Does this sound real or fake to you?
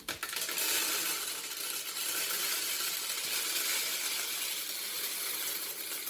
real